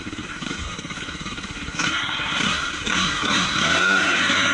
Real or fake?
fake